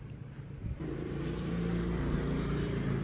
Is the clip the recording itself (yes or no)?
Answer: no